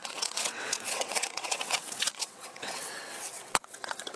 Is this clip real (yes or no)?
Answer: no